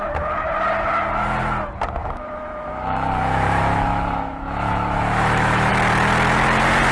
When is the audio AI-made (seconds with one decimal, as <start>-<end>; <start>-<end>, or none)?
2.0-5.7